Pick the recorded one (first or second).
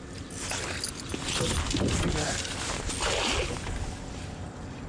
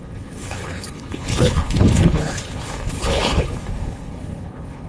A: first